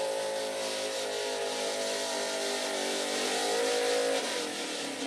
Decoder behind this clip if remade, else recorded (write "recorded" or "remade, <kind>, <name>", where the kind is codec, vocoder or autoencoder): recorded